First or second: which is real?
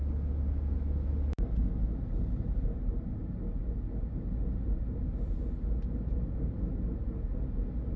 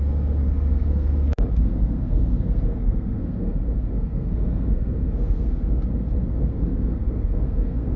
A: first